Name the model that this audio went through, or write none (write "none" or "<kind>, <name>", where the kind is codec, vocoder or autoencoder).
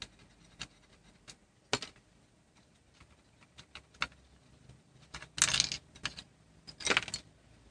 none